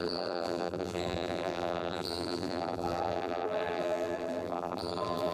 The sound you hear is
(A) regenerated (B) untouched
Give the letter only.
A